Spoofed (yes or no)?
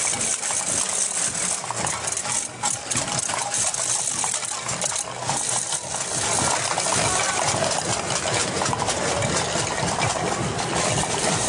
yes